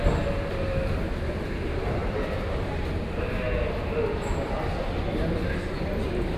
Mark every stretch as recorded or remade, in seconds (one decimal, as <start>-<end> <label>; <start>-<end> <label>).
0.0-6.4 recorded